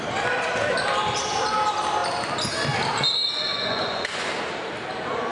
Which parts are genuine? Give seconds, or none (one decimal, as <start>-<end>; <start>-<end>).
0.0-3.5; 4.3-5.3